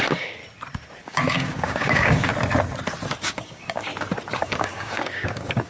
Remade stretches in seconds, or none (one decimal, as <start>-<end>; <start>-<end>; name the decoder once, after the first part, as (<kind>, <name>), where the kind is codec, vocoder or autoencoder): 0.0-0.4 (codec, DAC); 1.0-2.3; 3.2-3.9; 4.4-5.7